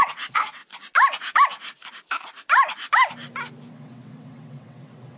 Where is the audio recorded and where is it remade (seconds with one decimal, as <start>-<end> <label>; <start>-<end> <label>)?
0.0-0.6 remade; 0.6-3.7 recorded; 3.7-5.2 remade